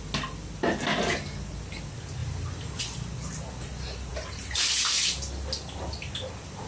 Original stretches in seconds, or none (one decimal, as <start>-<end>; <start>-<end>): 0.0-6.7